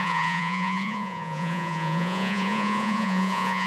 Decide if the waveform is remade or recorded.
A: remade